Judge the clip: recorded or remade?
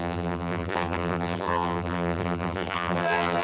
remade